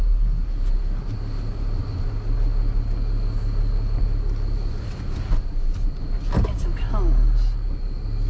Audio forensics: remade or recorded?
recorded